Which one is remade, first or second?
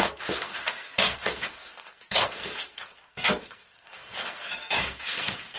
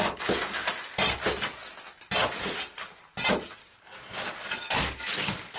first